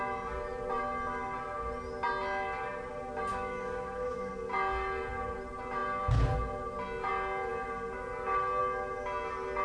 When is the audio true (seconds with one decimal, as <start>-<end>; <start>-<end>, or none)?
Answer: 0.0-3.3; 4.3-9.6